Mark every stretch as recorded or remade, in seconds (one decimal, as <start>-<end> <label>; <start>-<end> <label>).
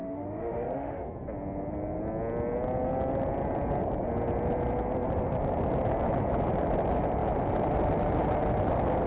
0.0-1.1 remade; 1.1-9.1 recorded